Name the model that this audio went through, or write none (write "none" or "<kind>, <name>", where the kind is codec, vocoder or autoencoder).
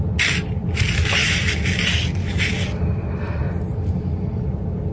none